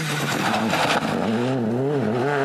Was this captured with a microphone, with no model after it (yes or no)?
yes